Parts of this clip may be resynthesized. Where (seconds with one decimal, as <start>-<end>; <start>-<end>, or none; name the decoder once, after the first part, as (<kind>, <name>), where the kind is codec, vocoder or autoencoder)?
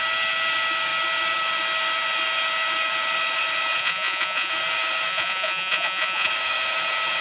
3.8-4.5 (vocoder, Vocos); 5.1-6.3